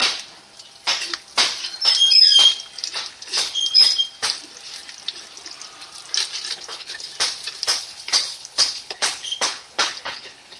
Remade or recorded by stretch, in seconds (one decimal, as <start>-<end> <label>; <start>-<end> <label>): 0.0-3.1 recorded; 3.1-3.6 remade; 3.6-6.5 recorded; 6.5-7.1 remade; 7.1-7.8 recorded; 7.8-10.6 remade